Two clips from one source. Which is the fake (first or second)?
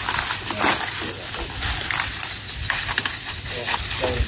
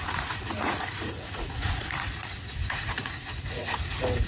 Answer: second